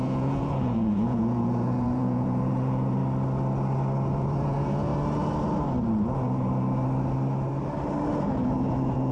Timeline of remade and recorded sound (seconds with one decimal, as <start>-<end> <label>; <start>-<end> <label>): 0.0-3.0 remade; 3.0-4.1 recorded; 4.1-4.9 remade; 4.9-8.2 recorded; 8.2-9.1 remade

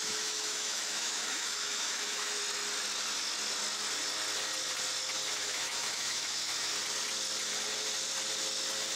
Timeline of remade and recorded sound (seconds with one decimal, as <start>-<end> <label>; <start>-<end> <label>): 0.0-2.4 remade; 2.4-5.4 recorded; 5.4-6.7 remade; 6.7-9.0 recorded

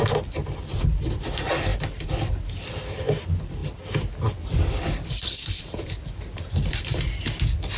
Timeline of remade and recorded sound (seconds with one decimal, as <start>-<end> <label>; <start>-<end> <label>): 0.0-3.6 recorded; 3.6-6.7 remade; 6.7-7.8 recorded